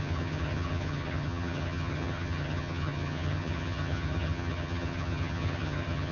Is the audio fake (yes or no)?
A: yes